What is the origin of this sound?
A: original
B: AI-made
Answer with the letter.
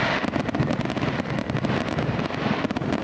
A